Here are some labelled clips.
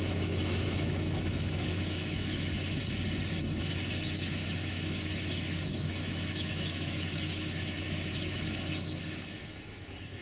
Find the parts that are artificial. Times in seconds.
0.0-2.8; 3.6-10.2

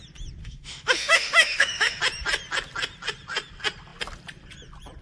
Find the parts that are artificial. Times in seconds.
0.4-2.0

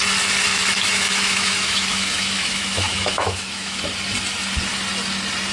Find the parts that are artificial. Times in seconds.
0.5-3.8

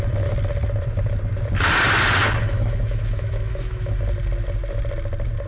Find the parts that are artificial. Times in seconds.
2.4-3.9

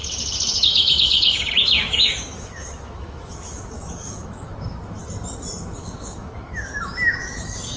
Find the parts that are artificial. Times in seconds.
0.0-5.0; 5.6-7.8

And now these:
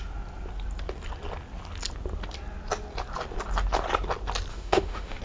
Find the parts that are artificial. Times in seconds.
4.5-5.2

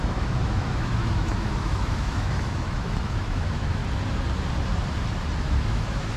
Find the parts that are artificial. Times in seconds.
0.0-3.8; 5.4-6.2

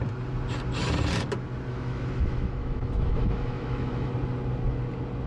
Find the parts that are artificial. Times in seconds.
1.7-4.1